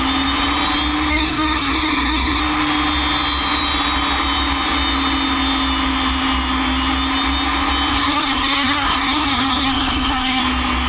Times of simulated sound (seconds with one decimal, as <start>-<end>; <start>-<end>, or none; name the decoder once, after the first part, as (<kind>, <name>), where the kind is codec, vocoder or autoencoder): 1.1-2.4 (codec, SNAC); 7.9-10.4